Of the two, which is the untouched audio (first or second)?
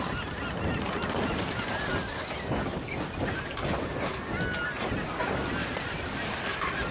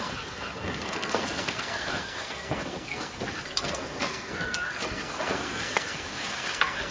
first